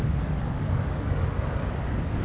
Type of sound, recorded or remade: remade